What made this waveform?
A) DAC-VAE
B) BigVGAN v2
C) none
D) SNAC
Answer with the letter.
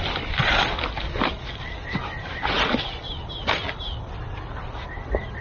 C